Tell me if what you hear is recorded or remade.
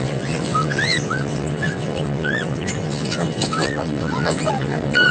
remade